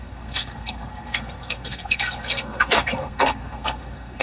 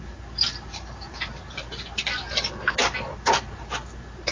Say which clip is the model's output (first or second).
first